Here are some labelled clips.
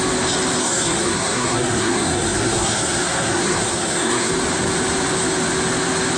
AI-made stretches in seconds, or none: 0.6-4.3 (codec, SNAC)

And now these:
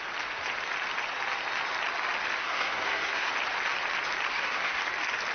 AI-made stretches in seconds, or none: 2.4-3.3 (codec, SNAC); 4.3-4.8

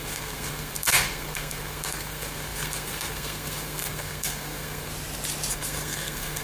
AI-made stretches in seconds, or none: 0.0-4.9 (codec, SNAC); 5.5-6.4

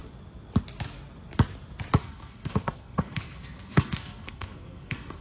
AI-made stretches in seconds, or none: 2.0-5.2 (codec, SNAC)

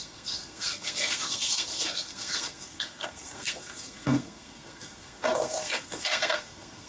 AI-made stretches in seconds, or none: 0.0-6.9 (codec, SNAC)

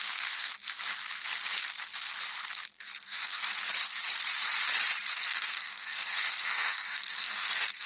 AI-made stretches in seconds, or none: 0.0-0.5 (codec, SNAC); 3.0-3.5; 5.1-7.9

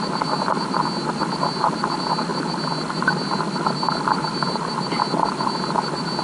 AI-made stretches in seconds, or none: none

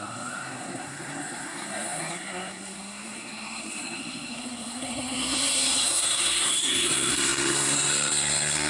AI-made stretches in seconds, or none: 0.0-8.7 (codec, SNAC)